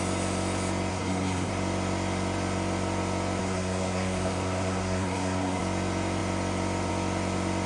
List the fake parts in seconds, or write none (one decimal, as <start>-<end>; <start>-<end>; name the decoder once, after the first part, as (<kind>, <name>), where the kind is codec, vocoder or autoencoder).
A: 0.9-1.5 (codec, SNAC); 3.4-5.6